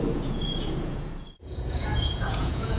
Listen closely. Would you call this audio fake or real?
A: fake